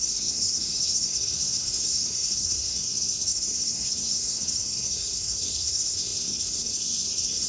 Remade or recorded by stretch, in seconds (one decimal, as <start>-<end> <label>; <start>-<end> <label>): 0.0-7.5 remade